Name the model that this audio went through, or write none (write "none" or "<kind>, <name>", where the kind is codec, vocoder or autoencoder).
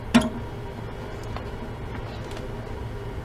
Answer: none